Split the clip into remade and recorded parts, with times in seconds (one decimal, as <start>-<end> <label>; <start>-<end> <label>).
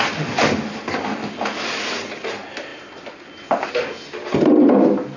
0.0-5.2 recorded